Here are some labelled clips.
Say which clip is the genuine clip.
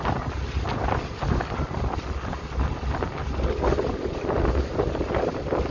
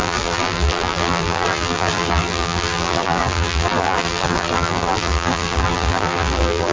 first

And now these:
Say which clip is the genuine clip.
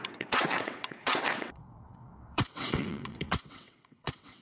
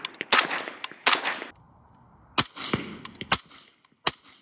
second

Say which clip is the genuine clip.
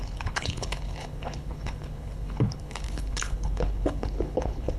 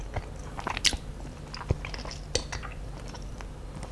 second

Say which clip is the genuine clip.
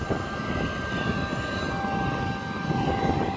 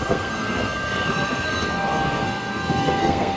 first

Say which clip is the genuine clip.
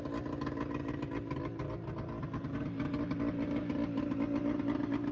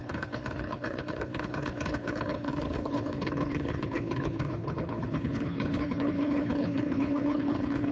first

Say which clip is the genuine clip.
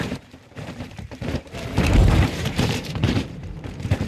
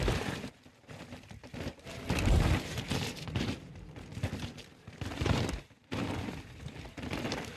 second